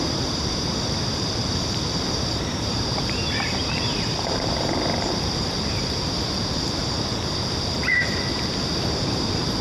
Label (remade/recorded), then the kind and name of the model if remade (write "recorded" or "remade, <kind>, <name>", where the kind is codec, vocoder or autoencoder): remade, vocoder, BigVGAN v2